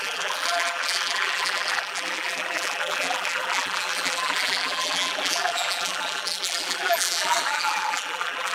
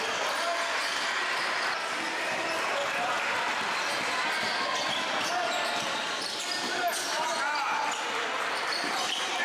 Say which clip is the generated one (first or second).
first